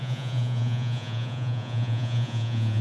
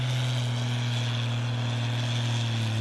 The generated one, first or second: first